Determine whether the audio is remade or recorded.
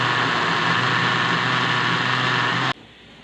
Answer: recorded